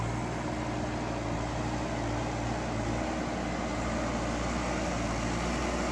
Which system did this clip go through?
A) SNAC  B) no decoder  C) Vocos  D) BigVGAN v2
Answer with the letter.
B